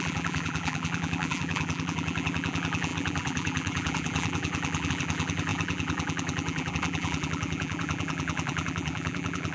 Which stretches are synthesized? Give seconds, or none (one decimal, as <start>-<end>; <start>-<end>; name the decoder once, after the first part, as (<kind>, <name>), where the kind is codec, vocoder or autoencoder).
0.0-9.5 (vocoder, BigVGAN v2)